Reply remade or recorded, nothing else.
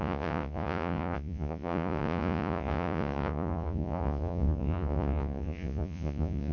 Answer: remade